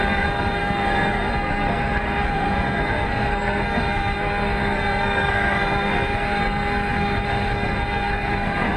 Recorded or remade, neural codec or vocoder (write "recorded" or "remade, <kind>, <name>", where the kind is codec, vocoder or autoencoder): remade, codec, SNAC